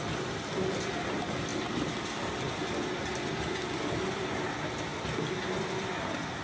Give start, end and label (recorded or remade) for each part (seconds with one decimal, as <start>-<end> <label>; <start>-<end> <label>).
0.0-6.4 recorded